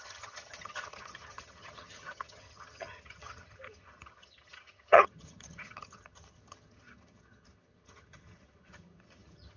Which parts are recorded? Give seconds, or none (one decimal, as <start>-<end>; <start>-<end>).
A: none